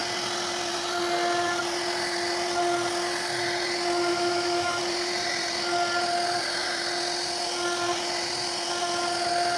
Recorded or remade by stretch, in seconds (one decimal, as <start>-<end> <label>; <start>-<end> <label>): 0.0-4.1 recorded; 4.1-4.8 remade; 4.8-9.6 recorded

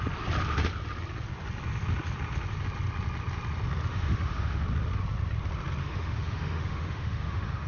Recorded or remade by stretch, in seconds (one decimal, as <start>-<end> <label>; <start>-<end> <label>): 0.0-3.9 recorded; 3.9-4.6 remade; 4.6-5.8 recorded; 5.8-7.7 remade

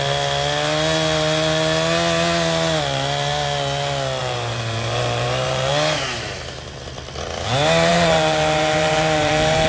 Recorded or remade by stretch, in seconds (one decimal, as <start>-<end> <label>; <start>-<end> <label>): 0.0-4.2 recorded; 4.2-5.7 remade; 5.7-7.9 recorded; 7.9-9.7 remade